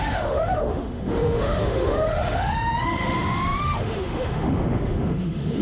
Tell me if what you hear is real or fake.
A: fake